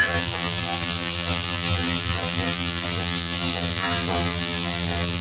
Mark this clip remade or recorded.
remade